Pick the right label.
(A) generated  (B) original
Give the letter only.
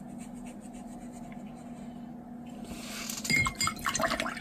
B